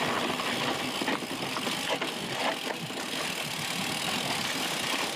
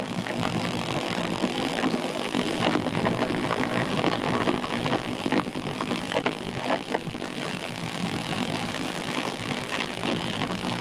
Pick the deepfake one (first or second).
second